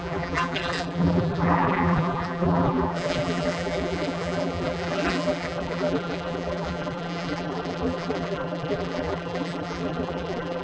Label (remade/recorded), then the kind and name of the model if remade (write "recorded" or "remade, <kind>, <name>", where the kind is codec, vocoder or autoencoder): remade, vocoder, BigVGAN v2